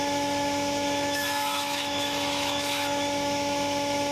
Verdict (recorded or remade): remade